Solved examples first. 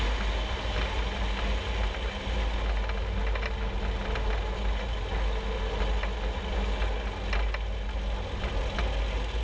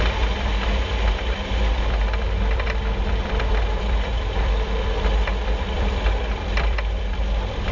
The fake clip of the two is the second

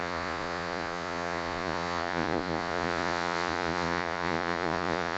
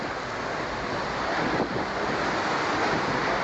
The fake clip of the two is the first